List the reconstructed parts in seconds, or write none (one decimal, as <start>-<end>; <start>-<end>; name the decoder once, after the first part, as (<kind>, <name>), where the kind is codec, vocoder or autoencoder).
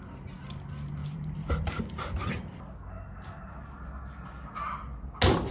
1.0-2.3 (vocoder, BigVGAN v2)